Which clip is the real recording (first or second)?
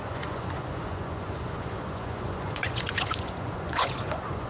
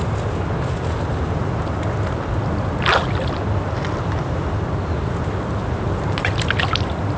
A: second